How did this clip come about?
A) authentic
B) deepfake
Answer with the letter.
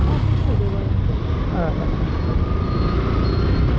A